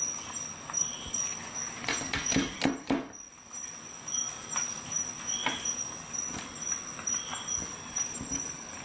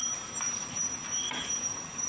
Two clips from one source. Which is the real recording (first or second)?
first